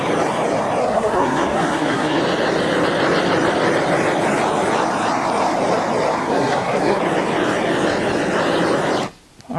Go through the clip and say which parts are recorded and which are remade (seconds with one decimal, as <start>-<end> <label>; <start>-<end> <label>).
0.0-0.8 recorded; 0.8-2.2 remade; 2.2-6.2 recorded; 6.2-7.0 remade; 7.0-9.6 recorded